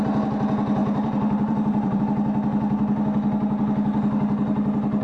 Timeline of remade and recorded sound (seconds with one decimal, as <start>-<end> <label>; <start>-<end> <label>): 0.0-0.8 recorded; 0.8-2.0 remade; 2.0-5.0 recorded